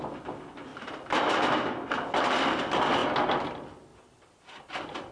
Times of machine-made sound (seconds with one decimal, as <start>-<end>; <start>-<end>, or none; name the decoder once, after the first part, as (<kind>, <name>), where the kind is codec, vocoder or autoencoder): 0.7-1.9 (vocoder, BigVGAN v2)